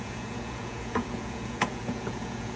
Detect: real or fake fake